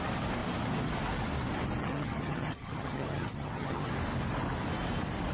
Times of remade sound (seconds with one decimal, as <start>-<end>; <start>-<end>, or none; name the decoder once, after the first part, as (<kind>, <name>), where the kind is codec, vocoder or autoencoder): 1.8-3.9 (vocoder, HiFi-GAN)